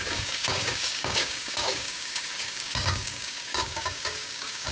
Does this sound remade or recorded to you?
remade